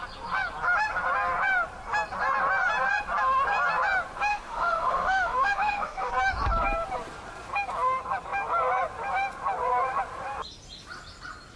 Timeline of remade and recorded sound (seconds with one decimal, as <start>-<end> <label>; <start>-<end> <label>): 0.0-4.3 recorded; 4.3-6.1 remade; 6.1-11.6 recorded